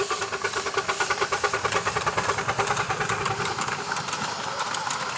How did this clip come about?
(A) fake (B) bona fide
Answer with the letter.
B